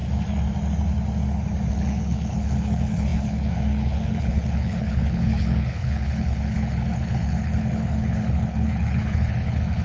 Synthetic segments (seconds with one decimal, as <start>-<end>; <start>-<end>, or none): 1.7-9.8